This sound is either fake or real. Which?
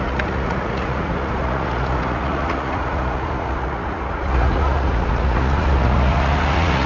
fake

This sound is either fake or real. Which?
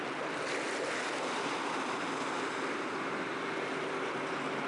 real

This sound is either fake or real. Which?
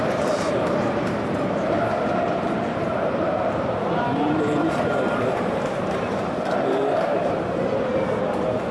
fake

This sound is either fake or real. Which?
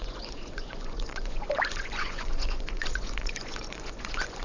fake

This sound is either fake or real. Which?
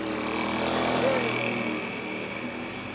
real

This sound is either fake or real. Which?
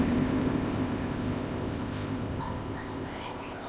fake